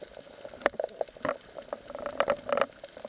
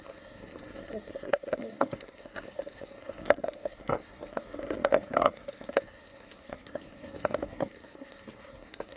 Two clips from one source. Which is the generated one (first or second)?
second